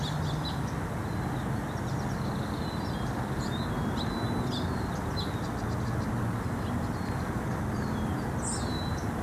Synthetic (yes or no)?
no